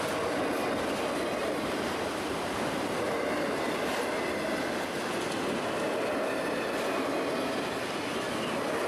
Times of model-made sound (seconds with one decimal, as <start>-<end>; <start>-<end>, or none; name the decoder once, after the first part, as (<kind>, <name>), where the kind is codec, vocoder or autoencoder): 1.4-4.0 (vocoder, BigVGAN v2)